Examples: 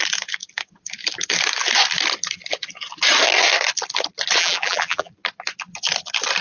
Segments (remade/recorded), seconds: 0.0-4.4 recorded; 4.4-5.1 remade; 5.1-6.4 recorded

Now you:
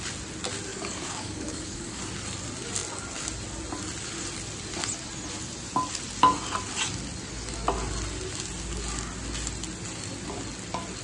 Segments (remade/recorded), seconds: 0.0-0.7 recorded; 0.7-2.0 remade; 2.0-11.0 recorded

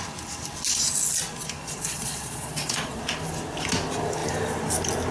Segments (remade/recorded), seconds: 0.0-1.6 recorded; 1.6-3.0 remade; 3.0-5.1 recorded

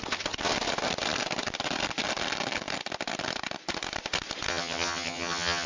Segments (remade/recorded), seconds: 0.0-4.5 recorded; 4.5-5.7 remade

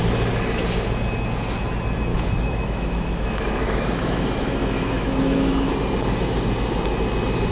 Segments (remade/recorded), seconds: 0.0-2.1 recorded; 2.1-5.7 remade; 5.7-7.5 recorded

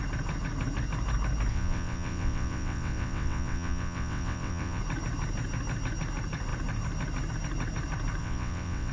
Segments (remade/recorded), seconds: 0.0-1.5 recorded; 1.5-4.8 remade; 4.8-8.2 recorded; 8.2-8.9 remade

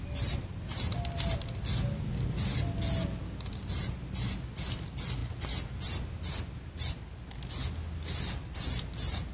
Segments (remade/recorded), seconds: 0.0-9.3 recorded